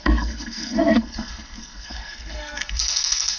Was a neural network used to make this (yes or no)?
yes